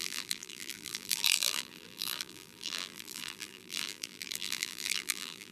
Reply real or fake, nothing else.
fake